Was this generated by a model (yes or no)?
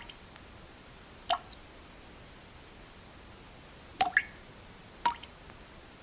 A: no